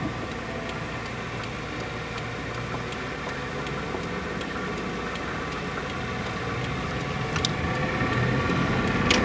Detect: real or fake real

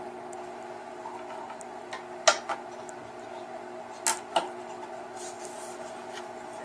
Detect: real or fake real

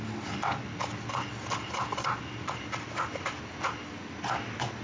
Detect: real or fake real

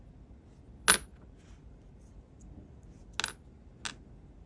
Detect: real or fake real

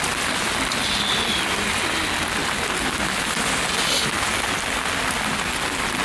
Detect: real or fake real